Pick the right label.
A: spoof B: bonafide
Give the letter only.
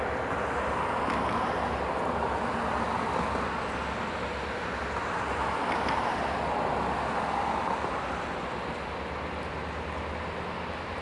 B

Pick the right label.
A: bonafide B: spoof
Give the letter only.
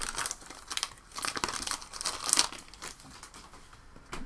A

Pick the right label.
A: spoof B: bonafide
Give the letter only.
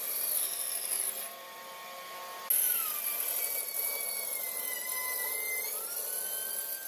B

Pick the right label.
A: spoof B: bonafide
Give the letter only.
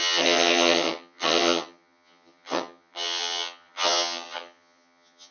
A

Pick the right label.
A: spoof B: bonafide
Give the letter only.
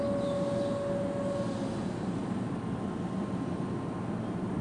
B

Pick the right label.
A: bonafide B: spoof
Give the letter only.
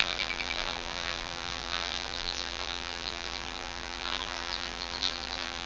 B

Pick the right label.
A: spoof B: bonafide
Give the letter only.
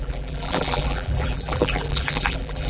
A